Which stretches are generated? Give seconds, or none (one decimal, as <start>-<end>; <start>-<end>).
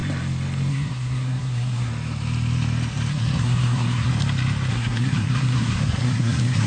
0.7-1.9; 3.1-4.1; 4.7-6.7